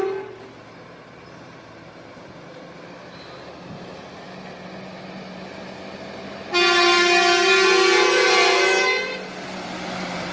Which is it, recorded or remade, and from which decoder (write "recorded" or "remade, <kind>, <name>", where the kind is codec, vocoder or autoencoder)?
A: recorded